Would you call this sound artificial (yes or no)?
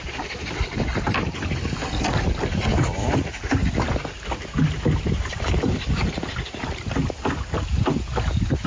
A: no